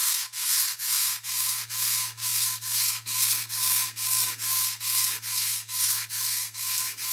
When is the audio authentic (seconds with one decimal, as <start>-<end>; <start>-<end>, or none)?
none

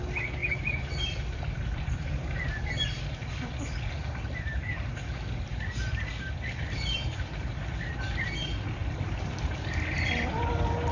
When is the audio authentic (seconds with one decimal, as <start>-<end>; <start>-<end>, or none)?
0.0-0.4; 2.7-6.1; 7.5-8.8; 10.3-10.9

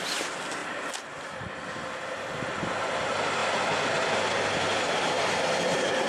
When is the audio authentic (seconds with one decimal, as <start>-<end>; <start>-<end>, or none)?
0.0-6.1

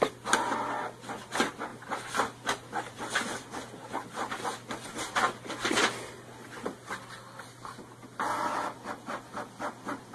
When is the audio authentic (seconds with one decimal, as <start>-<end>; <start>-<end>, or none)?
0.0-10.1

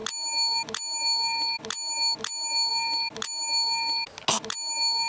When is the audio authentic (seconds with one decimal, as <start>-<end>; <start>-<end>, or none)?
0.0-5.1